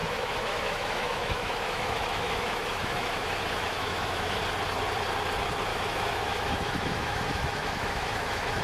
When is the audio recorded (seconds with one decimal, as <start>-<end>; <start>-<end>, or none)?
4.4-5.7